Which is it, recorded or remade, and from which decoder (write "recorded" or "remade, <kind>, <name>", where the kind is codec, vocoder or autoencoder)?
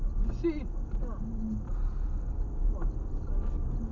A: recorded